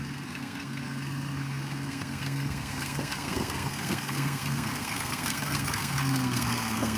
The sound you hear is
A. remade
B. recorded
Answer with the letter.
A